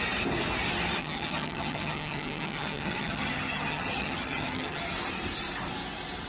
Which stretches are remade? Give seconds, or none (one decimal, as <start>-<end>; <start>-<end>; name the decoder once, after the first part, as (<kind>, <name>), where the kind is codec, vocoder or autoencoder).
1.0-4.8 (vocoder, HiFi-GAN)